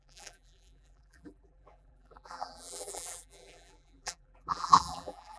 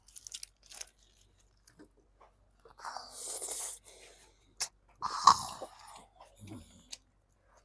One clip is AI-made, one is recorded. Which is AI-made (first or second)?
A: first